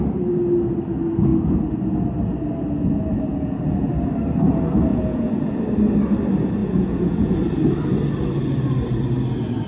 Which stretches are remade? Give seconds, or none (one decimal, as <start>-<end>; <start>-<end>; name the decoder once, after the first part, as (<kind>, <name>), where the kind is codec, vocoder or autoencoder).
3.3-3.9 (vocoder, Vocos); 4.9-5.6; 6.6-7.4